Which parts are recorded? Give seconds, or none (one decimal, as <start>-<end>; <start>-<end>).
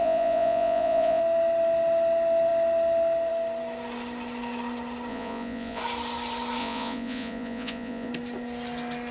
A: 1.2-5.1; 5.8-6.6; 8.1-9.1